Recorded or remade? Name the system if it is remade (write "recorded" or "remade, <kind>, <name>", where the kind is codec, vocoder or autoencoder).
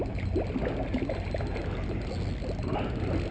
recorded